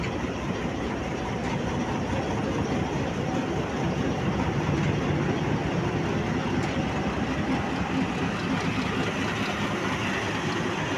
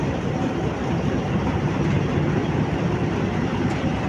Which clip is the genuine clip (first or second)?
first